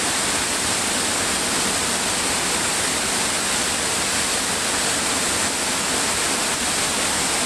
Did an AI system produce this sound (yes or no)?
no